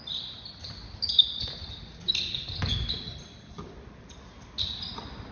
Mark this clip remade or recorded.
recorded